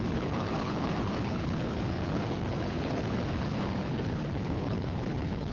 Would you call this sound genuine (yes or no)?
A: no